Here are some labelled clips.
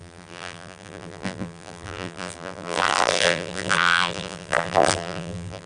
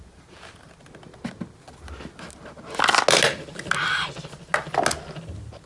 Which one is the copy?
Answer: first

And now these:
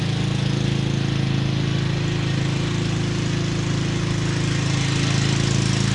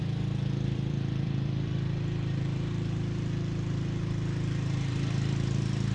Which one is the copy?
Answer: second